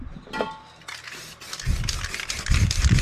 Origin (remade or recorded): recorded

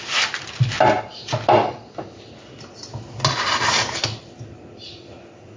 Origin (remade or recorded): recorded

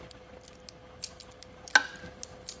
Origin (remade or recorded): recorded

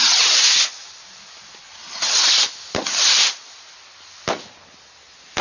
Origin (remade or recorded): recorded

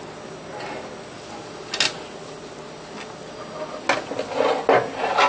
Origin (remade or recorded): recorded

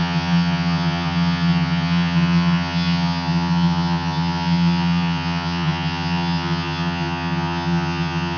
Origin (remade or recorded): remade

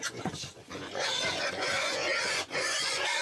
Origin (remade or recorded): remade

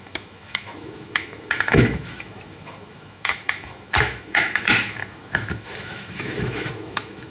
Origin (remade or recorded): remade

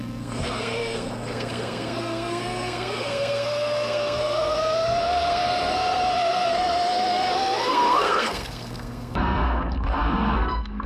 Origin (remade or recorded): remade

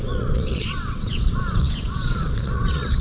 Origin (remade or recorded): remade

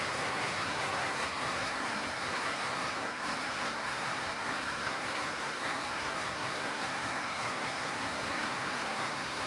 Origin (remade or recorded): remade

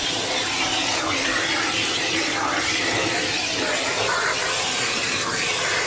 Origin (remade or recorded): recorded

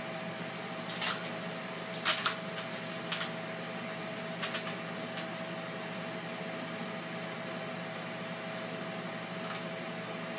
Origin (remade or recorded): recorded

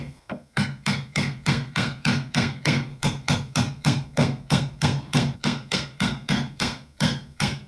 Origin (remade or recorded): remade